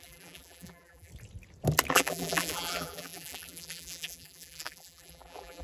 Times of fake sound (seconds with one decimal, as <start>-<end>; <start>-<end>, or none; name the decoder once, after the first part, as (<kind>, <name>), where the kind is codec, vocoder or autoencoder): 0.0-1.1 (vocoder, BigVGAN v2); 1.9-5.6